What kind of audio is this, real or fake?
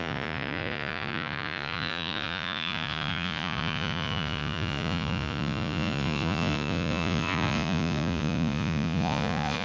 fake